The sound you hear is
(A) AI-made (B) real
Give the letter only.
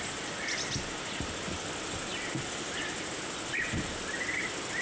B